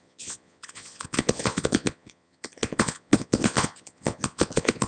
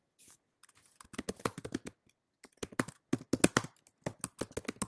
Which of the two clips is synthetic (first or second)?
first